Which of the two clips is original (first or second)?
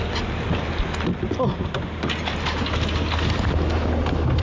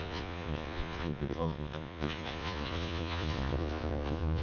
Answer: first